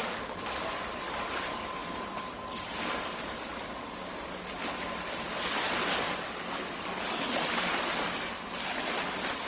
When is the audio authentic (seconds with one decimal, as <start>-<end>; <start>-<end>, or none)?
0.8-1.8; 2.7-3.5; 4.0-9.5